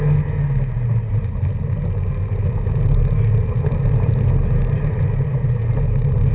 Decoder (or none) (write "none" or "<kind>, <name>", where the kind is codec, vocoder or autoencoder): none